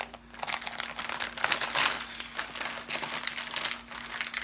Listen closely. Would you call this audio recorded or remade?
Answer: recorded